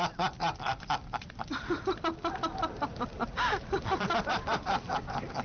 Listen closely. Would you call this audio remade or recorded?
remade